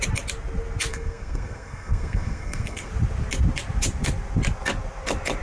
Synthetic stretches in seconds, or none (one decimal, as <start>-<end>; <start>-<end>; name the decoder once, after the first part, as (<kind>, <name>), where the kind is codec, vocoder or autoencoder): 0.9-2.9 (codec, SNAC)